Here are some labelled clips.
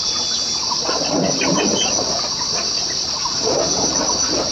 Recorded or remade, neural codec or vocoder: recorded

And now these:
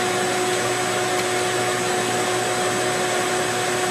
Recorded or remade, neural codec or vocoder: recorded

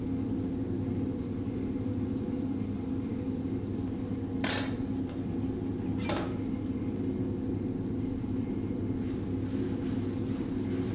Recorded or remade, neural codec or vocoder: recorded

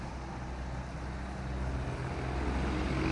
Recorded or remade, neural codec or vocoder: recorded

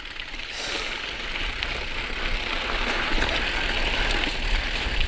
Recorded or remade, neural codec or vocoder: recorded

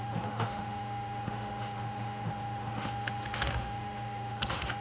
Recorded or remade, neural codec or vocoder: remade, autoencoder, DAC-VAE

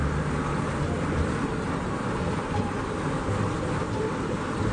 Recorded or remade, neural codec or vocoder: recorded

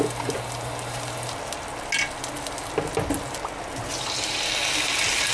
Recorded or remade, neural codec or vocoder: recorded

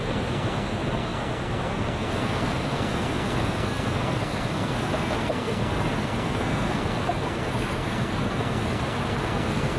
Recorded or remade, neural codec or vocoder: remade, codec, SNAC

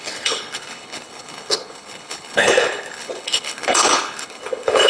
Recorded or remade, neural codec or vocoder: remade, codec, HILCodec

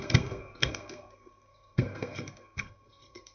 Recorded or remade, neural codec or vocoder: remade, codec, SNAC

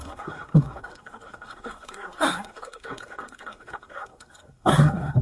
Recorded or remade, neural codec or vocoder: remade, codec, SNAC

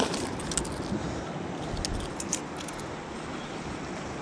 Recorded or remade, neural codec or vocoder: recorded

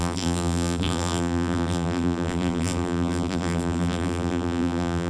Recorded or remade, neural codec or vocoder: remade, vocoder, BigVGAN v2